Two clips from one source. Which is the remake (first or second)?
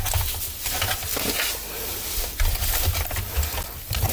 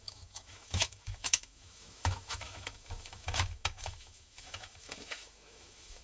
second